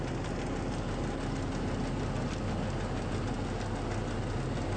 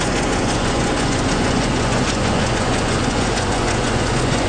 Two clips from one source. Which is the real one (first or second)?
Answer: first